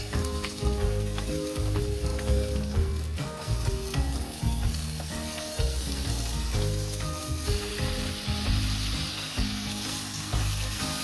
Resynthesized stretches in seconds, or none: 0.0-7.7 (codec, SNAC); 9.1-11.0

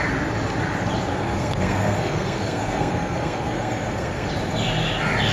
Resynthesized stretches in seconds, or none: 1.1-4.3 (codec, SNAC)

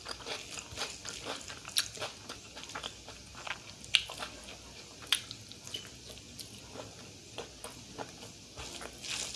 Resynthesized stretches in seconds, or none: none

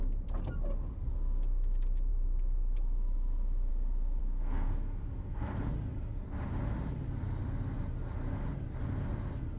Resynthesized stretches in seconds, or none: 4.2-5.5 (codec, SNAC)

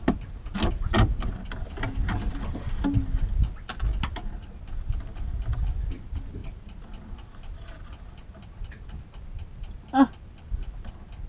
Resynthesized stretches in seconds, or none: none

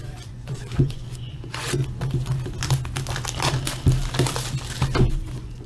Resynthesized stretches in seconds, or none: 0.0-1.8 (vocoder, Vocos); 5.0-5.7